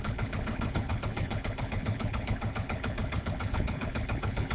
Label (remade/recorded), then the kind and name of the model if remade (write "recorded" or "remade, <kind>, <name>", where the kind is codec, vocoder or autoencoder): remade, codec, HILCodec